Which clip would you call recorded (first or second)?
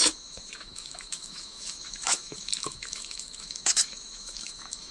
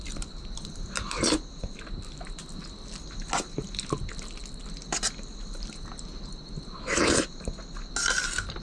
second